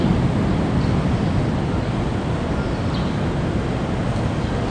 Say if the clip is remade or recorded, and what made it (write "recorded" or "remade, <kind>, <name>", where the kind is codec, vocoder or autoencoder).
recorded